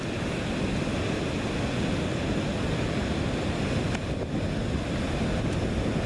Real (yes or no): yes